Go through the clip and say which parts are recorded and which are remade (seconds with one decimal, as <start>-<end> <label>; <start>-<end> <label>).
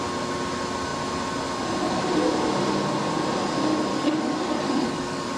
0.0-3.9 recorded; 3.9-5.4 remade